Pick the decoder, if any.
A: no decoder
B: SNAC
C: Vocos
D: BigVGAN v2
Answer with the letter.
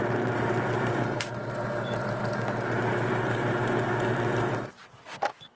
A